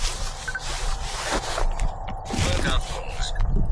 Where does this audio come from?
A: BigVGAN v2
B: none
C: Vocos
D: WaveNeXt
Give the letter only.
A